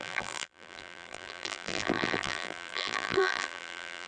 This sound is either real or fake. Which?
fake